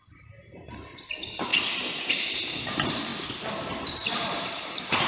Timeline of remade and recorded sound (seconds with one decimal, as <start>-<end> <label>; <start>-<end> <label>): 0.0-1.5 remade; 1.5-2.1 recorded; 2.1-5.1 remade